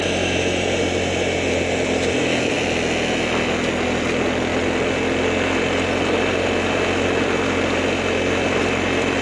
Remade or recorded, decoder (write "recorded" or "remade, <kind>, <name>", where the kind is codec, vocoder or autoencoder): recorded